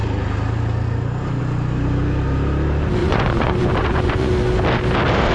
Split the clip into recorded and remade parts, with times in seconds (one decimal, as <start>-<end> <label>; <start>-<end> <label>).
0.0-3.0 recorded; 3.0-4.3 remade; 4.3-5.3 recorded